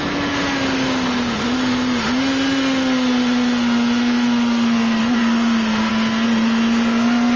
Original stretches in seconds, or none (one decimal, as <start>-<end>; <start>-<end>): 0.0-5.2; 5.9-7.4